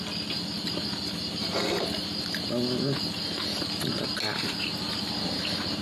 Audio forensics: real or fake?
real